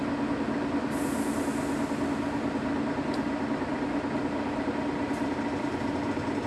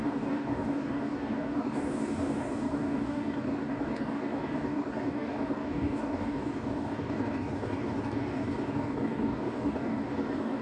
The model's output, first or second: second